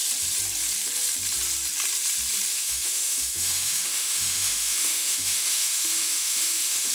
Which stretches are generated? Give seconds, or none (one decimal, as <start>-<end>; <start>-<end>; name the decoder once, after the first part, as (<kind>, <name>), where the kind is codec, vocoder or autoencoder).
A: 2.5-6.9 (autoencoder, DAC-VAE)